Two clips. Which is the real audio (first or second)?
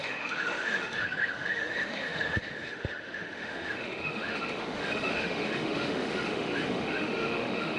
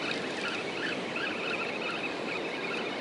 second